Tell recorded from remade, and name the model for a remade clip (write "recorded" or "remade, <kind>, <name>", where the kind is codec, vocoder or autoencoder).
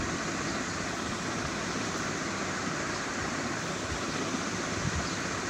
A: recorded